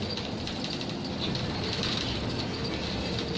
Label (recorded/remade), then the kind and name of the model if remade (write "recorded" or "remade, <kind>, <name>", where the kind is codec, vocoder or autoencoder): recorded